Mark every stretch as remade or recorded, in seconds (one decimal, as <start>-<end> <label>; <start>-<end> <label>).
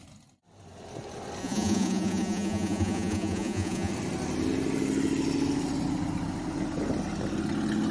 0.0-1.4 recorded; 1.4-3.9 remade; 3.9-7.9 recorded